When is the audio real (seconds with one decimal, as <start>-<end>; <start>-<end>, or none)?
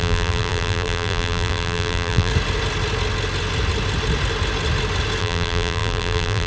2.3-5.2